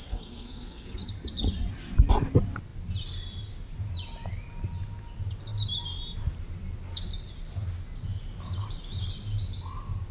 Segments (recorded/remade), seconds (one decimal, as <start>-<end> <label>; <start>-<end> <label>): 0.0-1.1 remade; 1.1-10.1 recorded

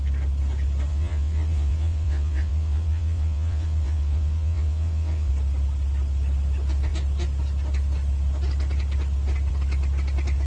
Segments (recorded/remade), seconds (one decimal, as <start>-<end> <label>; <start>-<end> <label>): 0.0-0.9 recorded; 0.9-5.3 remade; 5.3-10.5 recorded

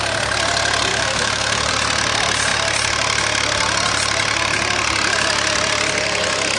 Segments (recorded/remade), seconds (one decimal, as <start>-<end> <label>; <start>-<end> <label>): 0.0-0.9 recorded; 0.9-1.7 remade; 1.7-6.6 recorded

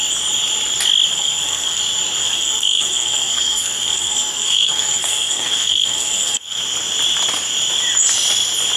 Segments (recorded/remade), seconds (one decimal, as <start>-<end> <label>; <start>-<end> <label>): 0.0-1.1 recorded; 1.1-1.8 remade; 1.8-2.2 recorded; 2.2-6.6 remade; 6.6-8.8 recorded